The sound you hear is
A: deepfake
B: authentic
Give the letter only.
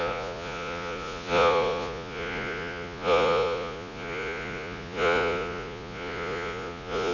A